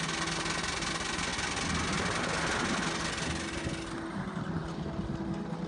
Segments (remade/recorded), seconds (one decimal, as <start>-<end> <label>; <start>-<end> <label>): 0.0-5.7 recorded